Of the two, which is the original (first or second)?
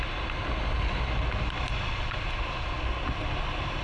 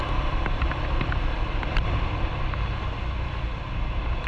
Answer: first